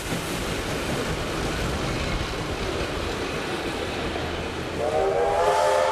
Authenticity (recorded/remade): recorded